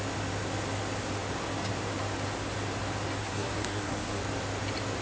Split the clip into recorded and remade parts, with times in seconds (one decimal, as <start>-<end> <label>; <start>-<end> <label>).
0.0-3.2 recorded; 3.2-4.2 remade; 4.2-5.0 recorded